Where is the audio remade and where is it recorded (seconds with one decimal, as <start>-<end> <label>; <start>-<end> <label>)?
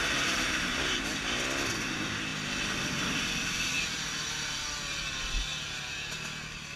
0.0-6.8 recorded